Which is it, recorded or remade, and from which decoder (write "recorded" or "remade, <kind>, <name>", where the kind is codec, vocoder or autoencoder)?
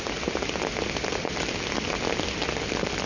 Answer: recorded